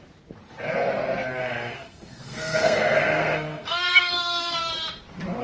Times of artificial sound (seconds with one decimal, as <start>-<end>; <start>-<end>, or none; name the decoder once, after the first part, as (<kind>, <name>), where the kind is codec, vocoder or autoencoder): 1.4-4.6 (codec, SNAC)